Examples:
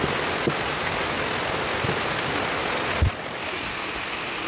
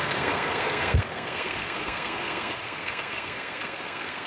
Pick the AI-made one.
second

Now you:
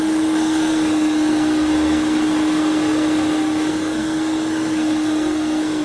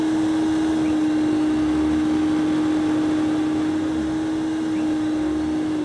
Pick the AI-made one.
first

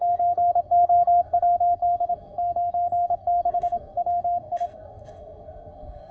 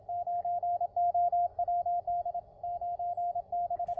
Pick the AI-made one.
first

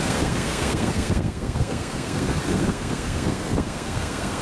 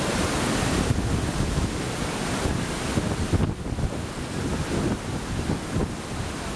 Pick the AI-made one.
first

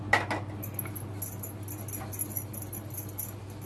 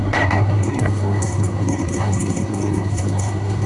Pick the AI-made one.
second